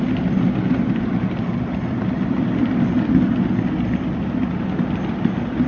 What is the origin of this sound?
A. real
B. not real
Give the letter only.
A